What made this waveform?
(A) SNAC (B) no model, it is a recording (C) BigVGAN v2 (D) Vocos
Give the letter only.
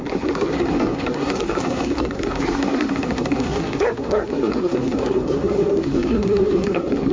A